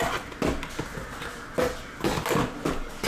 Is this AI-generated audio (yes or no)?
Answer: no